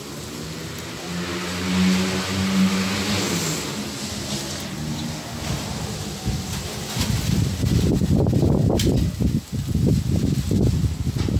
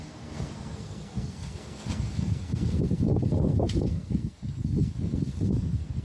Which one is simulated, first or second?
second